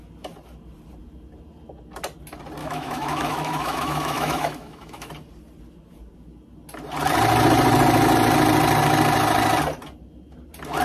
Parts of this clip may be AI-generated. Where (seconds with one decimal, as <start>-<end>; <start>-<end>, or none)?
2.6-5.1